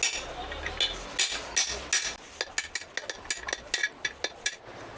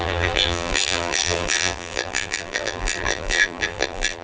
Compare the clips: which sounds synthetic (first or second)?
second